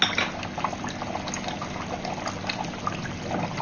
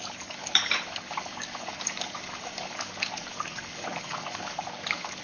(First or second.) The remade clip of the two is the second